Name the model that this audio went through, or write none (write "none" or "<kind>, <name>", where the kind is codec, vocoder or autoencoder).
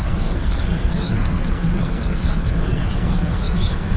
codec, SNAC